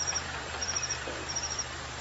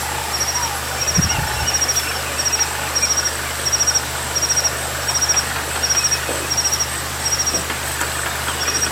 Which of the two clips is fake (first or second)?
first